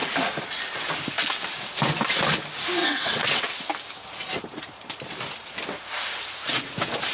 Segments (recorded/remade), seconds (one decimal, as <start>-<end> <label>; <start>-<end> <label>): 0.0-2.8 recorded; 2.8-3.7 remade; 3.7-7.1 recorded